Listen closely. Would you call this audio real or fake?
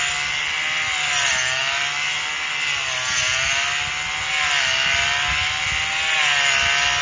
real